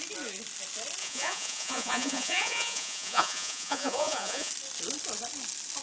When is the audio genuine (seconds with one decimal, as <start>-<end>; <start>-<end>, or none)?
0.0-1.0; 4.5-5.8